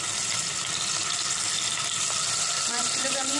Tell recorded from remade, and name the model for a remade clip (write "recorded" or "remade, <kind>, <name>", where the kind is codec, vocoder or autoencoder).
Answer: recorded